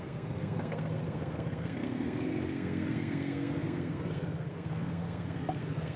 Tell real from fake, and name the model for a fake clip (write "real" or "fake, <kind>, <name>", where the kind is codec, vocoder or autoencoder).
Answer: fake, codec, SNAC